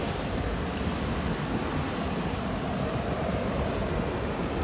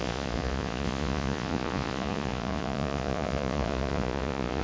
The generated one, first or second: second